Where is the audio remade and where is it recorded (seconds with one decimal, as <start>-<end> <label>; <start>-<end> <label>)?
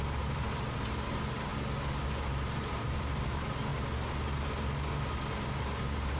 0.0-1.5 remade; 1.5-2.3 recorded; 2.3-3.7 remade; 3.7-5.3 recorded; 5.3-6.2 remade